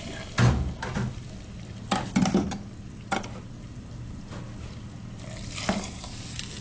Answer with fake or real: real